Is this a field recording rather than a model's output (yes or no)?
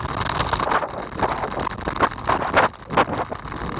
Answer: yes